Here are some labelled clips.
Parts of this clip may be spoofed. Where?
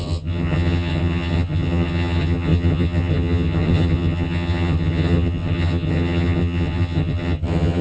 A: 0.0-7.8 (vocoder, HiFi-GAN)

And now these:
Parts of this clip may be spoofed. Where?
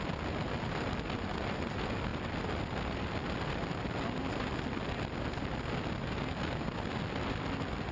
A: none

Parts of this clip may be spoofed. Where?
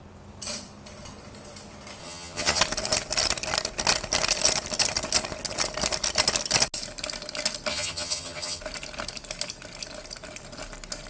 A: 2.0-2.6 (vocoder, HiFi-GAN); 7.7-8.6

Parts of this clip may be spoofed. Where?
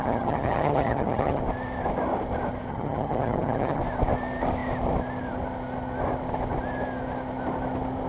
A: 0.0-1.4 (vocoder, HiFi-GAN); 2.7-3.8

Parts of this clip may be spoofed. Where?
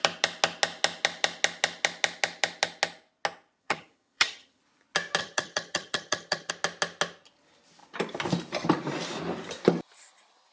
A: 3.6-4.6 (vocoder, HiFi-GAN); 5.2-6.5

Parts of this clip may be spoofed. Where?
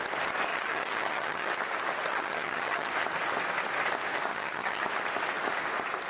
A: 0.5-1.5 (vocoder, HiFi-GAN); 2.1-2.9; 4.3-4.8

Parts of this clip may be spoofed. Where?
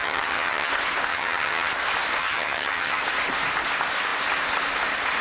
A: 0.0-0.7 (vocoder, HiFi-GAN); 1.1-1.7; 2.2-3.0